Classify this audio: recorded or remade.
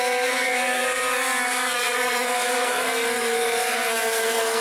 remade